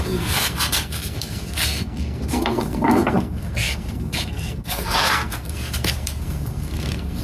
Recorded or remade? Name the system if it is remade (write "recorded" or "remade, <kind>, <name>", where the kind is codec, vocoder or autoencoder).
remade, codec, SNAC